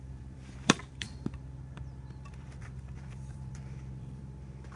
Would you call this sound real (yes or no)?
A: no